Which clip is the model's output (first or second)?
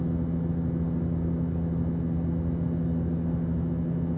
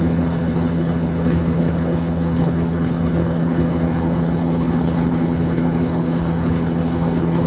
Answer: second